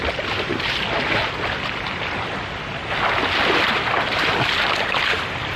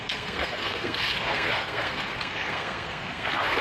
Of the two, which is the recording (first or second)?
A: first